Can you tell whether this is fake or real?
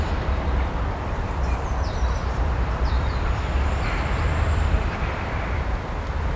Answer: fake